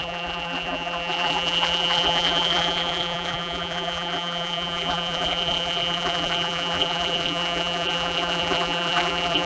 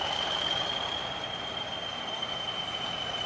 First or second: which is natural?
second